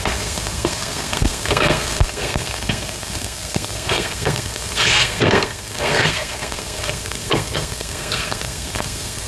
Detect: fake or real fake